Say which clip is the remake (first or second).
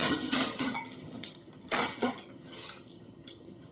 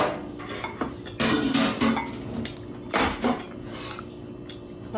first